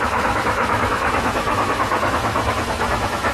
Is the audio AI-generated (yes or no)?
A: yes